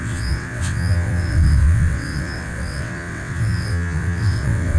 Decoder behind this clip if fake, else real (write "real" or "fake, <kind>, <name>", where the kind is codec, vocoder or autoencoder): fake, vocoder, WaveNeXt